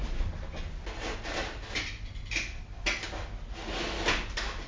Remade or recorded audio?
recorded